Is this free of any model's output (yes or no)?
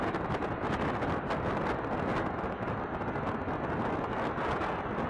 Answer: yes